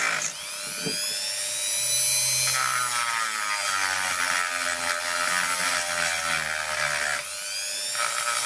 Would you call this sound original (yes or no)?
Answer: yes